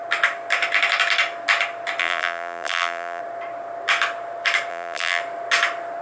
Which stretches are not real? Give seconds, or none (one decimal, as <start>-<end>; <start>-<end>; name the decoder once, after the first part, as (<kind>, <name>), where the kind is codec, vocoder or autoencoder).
2.0-3.2 (vocoder, BigVGAN v2); 4.7-5.2